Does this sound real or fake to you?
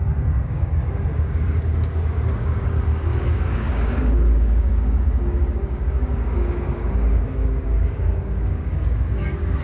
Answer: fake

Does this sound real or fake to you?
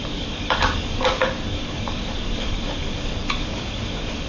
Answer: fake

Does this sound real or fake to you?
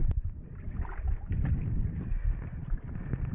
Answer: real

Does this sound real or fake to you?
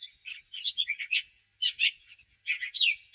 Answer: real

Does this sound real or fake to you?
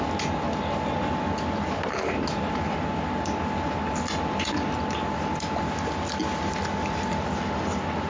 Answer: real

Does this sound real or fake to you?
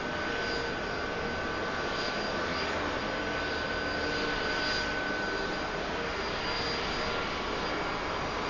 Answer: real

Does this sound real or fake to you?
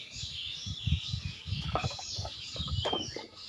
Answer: fake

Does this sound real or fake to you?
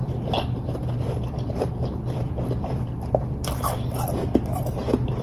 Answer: real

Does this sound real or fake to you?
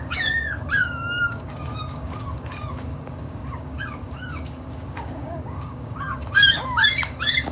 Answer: fake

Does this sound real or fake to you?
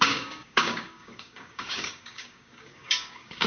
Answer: fake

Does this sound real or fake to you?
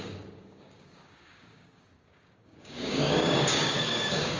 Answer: fake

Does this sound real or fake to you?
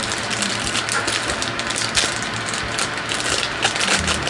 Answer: real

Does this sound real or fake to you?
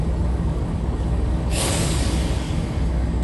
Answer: fake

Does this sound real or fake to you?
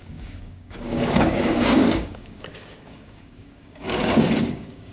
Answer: fake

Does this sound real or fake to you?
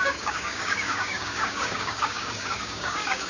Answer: fake